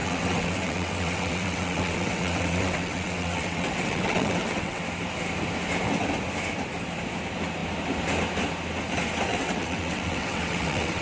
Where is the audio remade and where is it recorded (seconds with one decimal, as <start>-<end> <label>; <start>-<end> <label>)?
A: 0.0-4.8 remade; 4.8-9.3 recorded; 9.3-11.0 remade